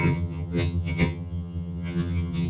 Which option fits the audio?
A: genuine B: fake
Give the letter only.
B